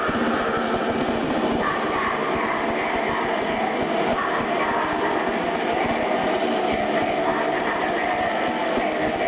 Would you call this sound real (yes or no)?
yes